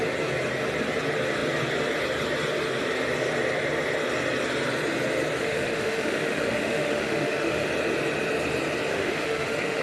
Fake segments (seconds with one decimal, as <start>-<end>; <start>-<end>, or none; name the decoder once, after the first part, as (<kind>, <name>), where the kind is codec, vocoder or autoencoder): 5.4-7.7 (autoencoder, DAC-VAE); 8.9-9.8